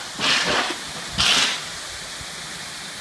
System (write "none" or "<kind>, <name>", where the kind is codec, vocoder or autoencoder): none